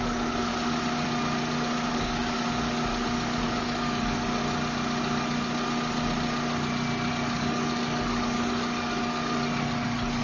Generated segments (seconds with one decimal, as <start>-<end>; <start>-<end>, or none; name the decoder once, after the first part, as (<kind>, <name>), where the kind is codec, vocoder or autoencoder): 0.0-0.5 (codec, DAC); 1.9-2.9; 3.4-4.4; 7.1-10.2